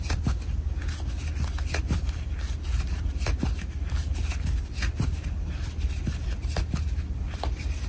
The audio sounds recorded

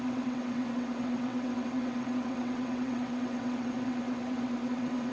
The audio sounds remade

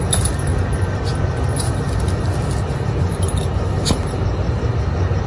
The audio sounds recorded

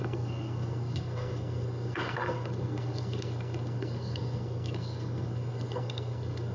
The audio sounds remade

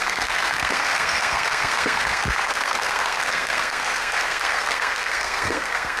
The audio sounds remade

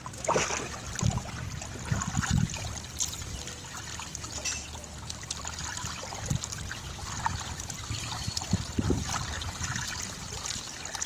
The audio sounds recorded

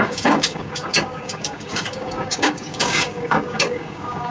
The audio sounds remade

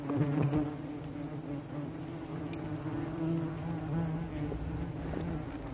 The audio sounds recorded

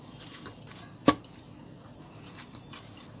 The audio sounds recorded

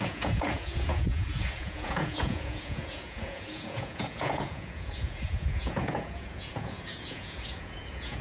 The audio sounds remade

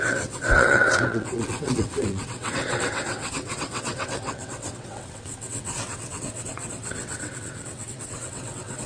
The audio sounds remade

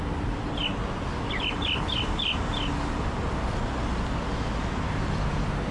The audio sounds recorded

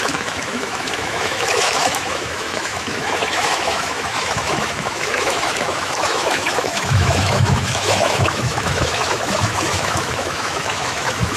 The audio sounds remade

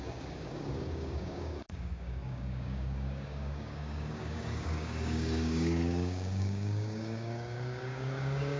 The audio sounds remade